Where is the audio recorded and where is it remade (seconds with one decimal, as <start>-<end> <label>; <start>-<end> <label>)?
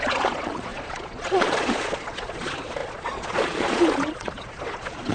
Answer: 0.0-5.1 remade